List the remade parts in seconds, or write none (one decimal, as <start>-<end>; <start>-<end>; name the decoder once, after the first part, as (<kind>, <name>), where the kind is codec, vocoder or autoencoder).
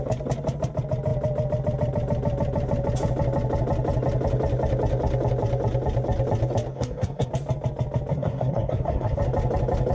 6.7-7.3 (codec, SNAC); 8.1-9.2